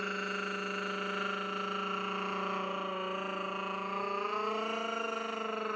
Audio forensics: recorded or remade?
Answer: recorded